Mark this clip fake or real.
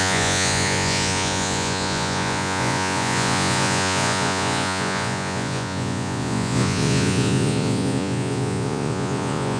fake